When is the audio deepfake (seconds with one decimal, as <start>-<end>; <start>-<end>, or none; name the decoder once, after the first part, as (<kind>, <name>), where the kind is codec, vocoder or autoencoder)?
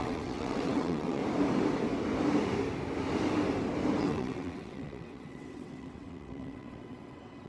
0.0-1.2 (vocoder, WaveNeXt); 4.0-7.5